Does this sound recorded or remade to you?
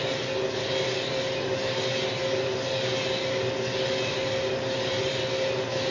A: recorded